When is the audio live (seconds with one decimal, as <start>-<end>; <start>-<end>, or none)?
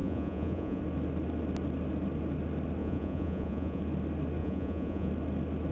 0.8-2.8; 3.8-4.4; 5.1-5.7